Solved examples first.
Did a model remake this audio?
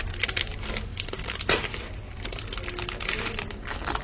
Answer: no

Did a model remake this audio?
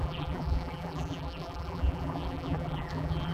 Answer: yes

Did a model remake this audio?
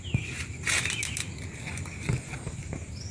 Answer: no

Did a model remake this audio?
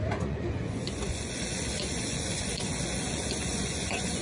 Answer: yes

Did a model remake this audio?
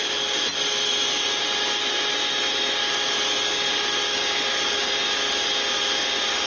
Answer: no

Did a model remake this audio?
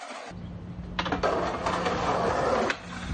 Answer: no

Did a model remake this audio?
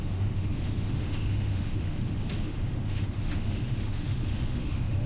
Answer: yes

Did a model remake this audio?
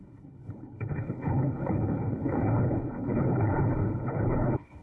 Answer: yes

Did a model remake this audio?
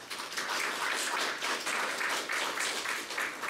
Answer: no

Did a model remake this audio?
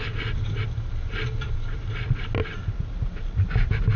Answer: no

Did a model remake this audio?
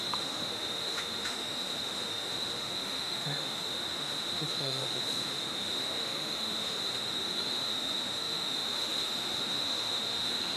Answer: yes